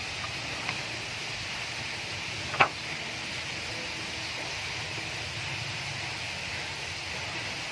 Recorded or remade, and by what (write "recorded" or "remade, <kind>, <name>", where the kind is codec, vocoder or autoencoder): recorded